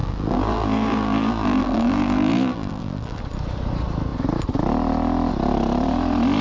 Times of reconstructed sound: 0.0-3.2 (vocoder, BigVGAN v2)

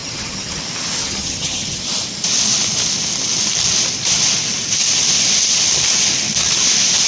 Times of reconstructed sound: 0.0-0.6 (vocoder, HiFi-GAN); 1.0-1.8

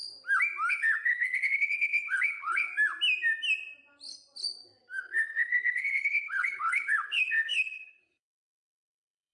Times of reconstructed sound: 0.7-2.7 (codec, HILCodec); 5.0-9.3

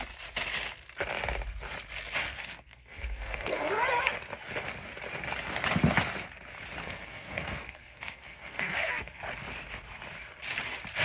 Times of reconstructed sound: 2.2-3.7 (codec, SNAC); 6.8-9.2

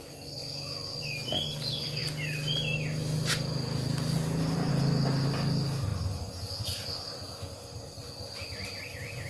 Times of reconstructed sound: none

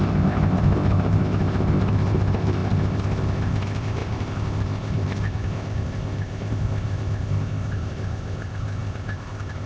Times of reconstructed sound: 0.0-9.7 (codec, ZipCodec)